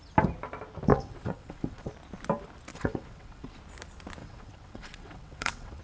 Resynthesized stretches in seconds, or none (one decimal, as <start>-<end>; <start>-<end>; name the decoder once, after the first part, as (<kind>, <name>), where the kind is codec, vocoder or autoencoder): 0.9-1.9 (vocoder, WaveNeXt); 2.7-3.6; 4.2-5.8